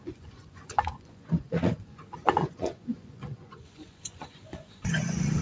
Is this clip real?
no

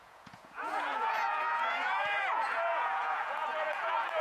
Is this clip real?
no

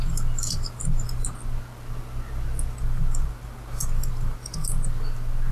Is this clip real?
yes